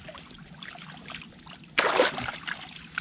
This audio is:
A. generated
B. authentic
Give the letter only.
B